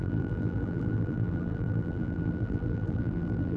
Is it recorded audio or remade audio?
remade